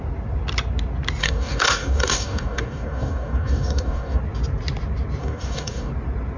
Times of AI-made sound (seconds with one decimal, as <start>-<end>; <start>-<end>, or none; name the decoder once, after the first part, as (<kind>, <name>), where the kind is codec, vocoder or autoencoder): 1.2-4.2 (codec, DAC); 5.2-5.9